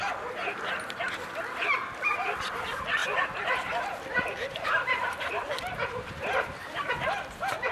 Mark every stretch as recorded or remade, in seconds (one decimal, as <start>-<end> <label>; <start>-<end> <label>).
0.0-7.7 recorded

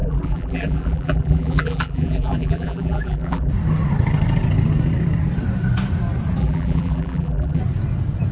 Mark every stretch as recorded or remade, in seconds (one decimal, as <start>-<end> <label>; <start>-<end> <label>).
0.0-3.5 remade; 3.5-6.4 recorded; 6.4-7.6 remade; 7.6-8.3 recorded

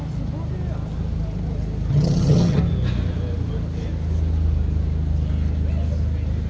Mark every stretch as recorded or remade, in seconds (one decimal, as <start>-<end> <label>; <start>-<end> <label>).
0.0-1.9 recorded; 1.9-2.6 remade; 2.6-6.5 recorded